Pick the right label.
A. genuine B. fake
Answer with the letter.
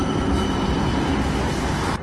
A